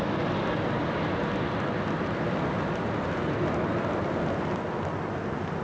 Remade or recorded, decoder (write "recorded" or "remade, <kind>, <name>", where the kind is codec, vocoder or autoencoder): recorded